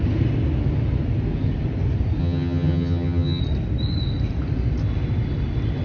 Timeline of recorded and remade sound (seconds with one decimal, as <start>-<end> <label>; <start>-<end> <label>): 0.0-2.2 recorded; 2.2-3.4 remade; 3.4-5.8 recorded